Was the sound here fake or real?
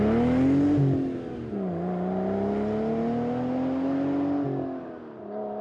real